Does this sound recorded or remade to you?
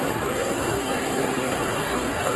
remade